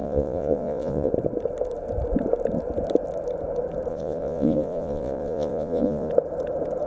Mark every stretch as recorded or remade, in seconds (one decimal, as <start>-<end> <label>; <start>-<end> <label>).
0.0-1.1 remade; 1.1-3.9 recorded; 3.9-6.1 remade; 6.1-6.9 recorded